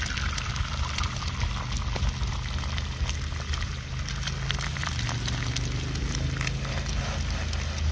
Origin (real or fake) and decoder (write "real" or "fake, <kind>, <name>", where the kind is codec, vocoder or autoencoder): real